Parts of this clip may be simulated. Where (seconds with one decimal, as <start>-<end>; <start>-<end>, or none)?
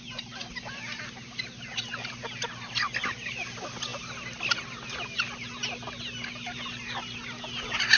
none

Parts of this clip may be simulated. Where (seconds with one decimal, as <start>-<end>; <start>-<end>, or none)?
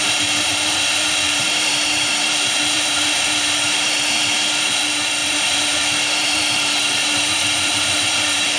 0.0-8.6